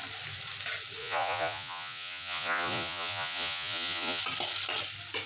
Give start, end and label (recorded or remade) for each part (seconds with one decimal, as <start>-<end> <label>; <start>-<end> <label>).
0.0-1.0 recorded; 1.0-4.2 remade; 4.2-5.3 recorded